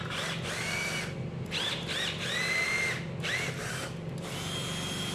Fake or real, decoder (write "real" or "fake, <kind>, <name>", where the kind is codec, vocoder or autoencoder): fake, vocoder, BigVGAN v2